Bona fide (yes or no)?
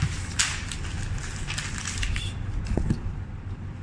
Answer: yes